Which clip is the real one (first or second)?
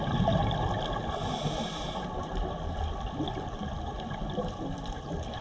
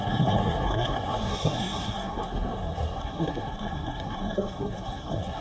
first